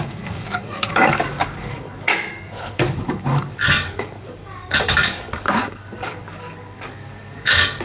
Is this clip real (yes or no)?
no